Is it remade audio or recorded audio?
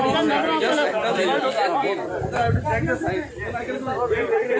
recorded